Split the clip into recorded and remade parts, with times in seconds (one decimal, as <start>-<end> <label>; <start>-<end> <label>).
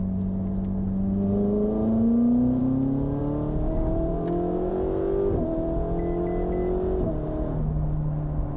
0.0-4.1 recorded; 4.1-4.7 remade; 4.7-8.6 recorded